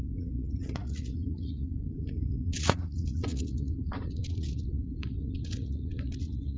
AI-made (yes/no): yes